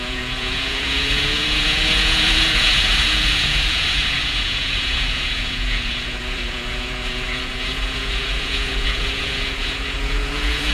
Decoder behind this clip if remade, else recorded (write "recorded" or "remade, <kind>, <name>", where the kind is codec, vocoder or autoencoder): remade, vocoder, Vocos